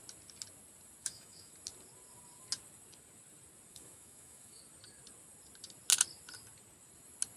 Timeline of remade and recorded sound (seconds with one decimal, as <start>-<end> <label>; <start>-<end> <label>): 0.0-1.0 recorded; 1.0-1.5 remade; 1.5-3.7 recorded; 3.7-4.6 remade; 4.6-7.4 recorded